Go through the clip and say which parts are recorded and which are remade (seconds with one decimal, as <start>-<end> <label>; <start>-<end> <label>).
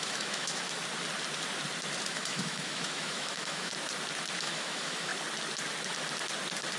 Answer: 0.0-0.8 remade; 0.8-2.1 recorded; 2.1-3.7 remade; 3.7-4.4 recorded; 4.4-5.1 remade; 5.1-6.8 recorded